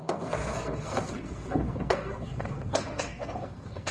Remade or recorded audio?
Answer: remade